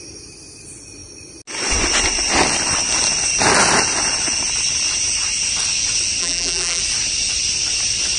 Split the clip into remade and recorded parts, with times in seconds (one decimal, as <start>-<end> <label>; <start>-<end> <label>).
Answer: 0.0-6.2 recorded; 6.2-6.8 remade; 6.8-8.2 recorded